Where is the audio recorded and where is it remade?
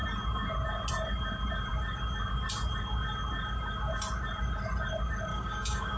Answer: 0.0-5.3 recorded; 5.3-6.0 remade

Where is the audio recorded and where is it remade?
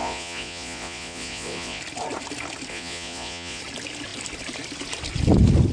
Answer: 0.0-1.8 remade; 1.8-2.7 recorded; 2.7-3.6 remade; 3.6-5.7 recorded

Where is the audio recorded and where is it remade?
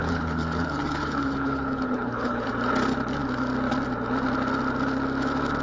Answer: 0.0-2.5 remade; 2.5-5.6 recorded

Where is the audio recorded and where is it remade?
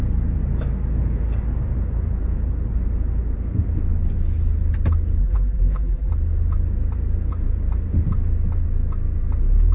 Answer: 0.0-5.2 recorded; 5.2-6.1 remade; 6.1-9.7 recorded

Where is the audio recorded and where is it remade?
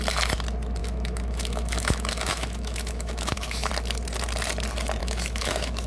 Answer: 0.0-0.8 recorded; 0.8-3.7 remade; 3.7-5.0 recorded; 5.0-5.9 remade